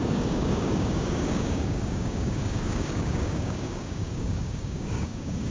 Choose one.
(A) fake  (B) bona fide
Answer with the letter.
A